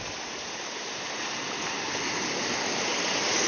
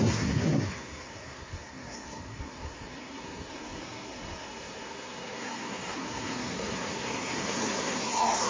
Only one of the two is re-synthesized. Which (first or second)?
second